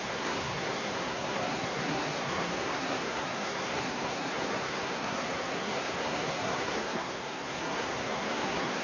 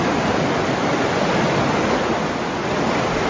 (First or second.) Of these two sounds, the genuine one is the second